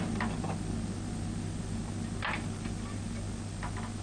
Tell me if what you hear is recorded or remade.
recorded